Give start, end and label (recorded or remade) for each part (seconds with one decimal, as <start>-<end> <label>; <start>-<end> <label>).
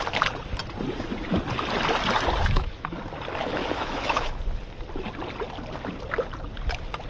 0.0-2.4 recorded; 2.4-3.0 remade; 3.0-3.4 recorded; 3.4-4.4 remade; 4.4-7.1 recorded